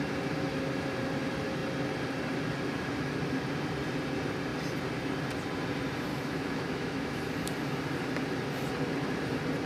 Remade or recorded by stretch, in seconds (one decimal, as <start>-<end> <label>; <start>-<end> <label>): 0.0-6.1 recorded; 6.1-7.3 remade; 7.3-9.7 recorded